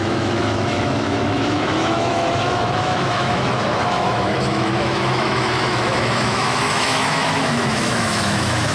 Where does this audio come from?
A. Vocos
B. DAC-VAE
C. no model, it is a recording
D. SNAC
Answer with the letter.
B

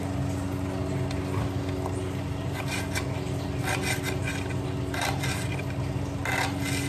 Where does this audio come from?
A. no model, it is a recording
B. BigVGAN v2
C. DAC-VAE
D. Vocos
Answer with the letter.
A